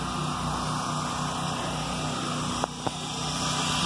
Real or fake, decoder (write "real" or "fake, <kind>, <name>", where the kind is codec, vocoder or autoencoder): real